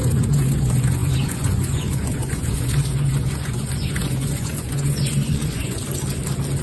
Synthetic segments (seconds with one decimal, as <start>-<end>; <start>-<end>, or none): 0.0-5.8